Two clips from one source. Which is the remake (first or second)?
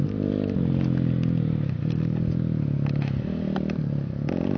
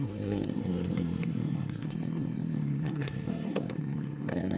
second